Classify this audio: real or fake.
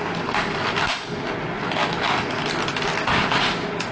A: real